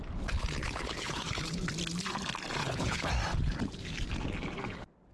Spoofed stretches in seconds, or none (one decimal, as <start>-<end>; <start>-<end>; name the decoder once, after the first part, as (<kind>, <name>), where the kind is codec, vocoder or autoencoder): 0.6-1.7 (codec, HILCodec); 2.6-3.1